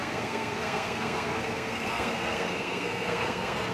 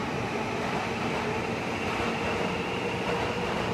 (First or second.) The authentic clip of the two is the second